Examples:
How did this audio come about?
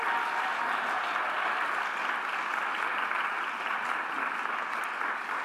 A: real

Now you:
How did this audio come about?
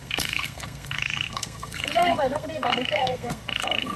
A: fake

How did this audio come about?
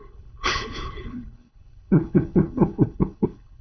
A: fake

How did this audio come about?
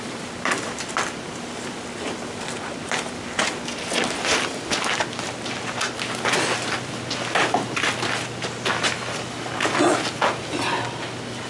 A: real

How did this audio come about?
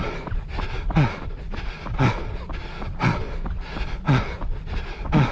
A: real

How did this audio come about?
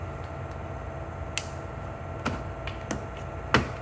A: real